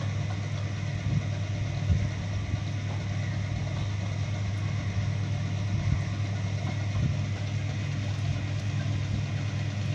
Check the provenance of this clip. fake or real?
real